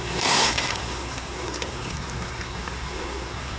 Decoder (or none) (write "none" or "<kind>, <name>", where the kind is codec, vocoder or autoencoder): codec, SNAC